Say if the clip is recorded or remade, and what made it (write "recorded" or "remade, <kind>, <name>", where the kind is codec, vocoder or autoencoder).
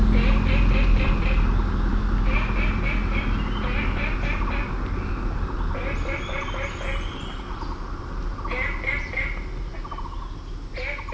recorded